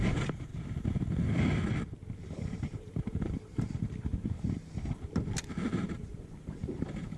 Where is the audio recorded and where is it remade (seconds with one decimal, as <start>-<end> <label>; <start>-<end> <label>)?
0.0-0.5 remade; 0.5-2.3 recorded; 2.3-4.6 remade; 4.6-5.9 recorded; 5.9-7.2 remade